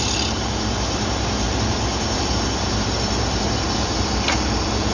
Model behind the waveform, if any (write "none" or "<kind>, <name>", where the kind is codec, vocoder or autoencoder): vocoder, BigVGAN v2